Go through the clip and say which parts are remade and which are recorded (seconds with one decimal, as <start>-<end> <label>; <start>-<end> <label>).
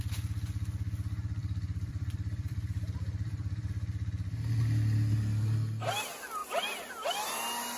0.0-1.4 recorded; 1.4-3.7 remade; 3.7-6.4 recorded; 6.4-6.9 remade; 6.9-7.8 recorded